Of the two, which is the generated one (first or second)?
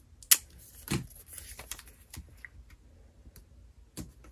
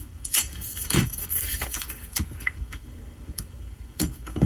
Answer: second